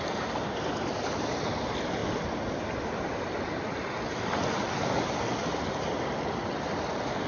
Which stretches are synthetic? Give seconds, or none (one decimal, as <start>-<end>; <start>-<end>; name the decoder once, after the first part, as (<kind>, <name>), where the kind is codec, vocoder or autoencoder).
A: none

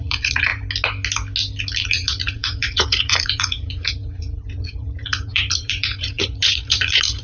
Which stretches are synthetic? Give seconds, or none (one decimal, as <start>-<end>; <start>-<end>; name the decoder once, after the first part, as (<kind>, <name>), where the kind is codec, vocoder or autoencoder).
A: 0.0-0.5 (vocoder, Vocos); 1.9-7.2

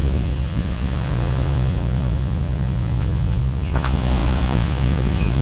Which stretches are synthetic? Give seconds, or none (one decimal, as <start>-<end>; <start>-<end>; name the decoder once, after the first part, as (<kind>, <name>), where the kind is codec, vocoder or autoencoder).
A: 0.0-5.4 (vocoder, Vocos)